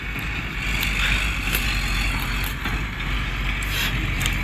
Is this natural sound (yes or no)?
yes